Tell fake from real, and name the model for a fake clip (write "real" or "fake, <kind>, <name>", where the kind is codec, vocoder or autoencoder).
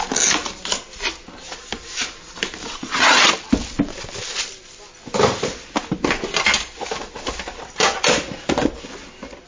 real